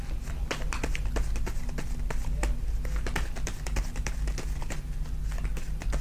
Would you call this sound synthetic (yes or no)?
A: no